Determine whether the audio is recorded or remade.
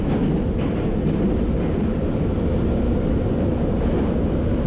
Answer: recorded